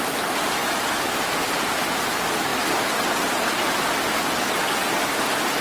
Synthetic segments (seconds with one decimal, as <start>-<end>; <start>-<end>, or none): none